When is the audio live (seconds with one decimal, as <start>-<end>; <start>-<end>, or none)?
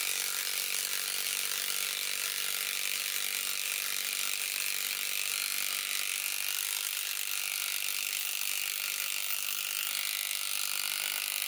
0.0-11.5